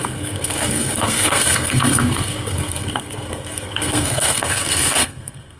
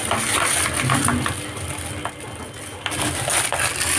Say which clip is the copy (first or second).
first